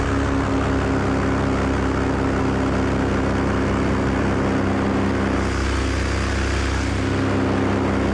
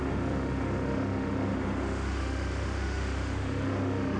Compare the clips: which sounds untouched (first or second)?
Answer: first